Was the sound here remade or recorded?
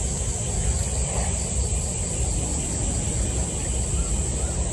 recorded